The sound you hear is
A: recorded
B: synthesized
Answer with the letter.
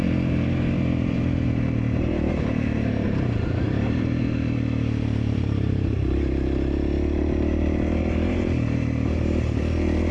B